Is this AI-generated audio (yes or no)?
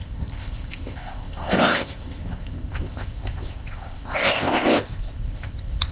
yes